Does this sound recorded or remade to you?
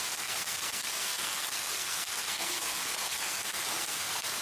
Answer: remade